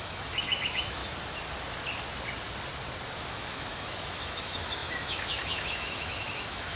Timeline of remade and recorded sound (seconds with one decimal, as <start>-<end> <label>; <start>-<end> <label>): 0.0-1.0 remade; 1.0-3.3 recorded; 3.3-6.8 remade